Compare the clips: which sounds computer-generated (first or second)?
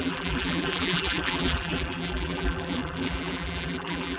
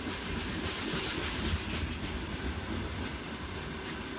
first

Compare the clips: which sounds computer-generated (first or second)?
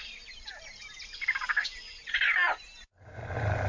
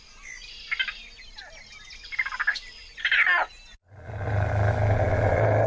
first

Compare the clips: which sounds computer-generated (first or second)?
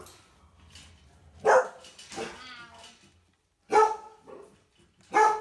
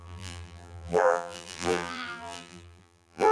second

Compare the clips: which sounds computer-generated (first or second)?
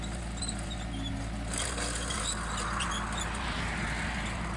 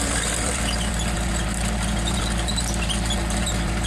second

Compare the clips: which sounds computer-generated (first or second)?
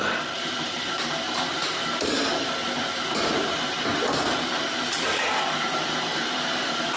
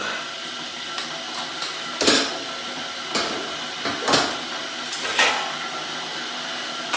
first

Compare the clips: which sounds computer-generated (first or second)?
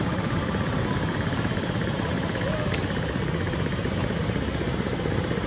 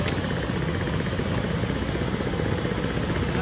first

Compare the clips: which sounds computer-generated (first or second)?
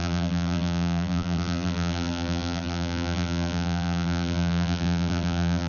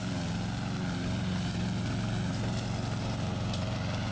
first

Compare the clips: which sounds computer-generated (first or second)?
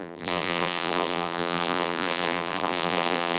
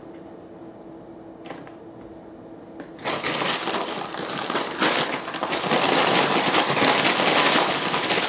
first